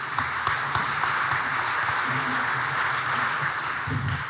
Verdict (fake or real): real